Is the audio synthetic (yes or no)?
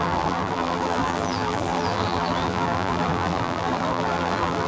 yes